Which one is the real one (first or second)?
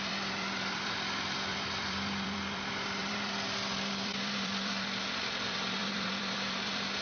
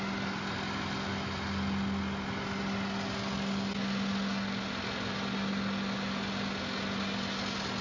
second